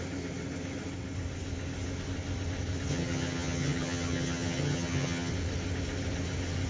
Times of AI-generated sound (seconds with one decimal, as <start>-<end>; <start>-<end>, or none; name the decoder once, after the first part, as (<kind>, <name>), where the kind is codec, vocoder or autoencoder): 2.9-5.3 (vocoder, HiFi-GAN)